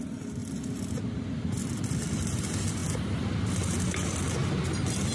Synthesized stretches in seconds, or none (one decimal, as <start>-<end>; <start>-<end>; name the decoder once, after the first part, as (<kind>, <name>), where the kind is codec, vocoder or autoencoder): none